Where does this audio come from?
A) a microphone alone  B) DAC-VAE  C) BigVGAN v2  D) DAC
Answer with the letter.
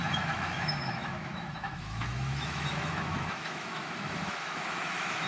B